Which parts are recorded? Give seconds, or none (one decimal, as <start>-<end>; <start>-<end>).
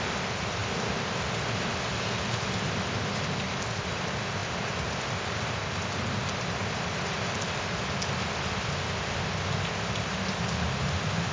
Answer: 0.0-11.3